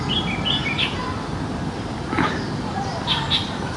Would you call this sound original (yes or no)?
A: yes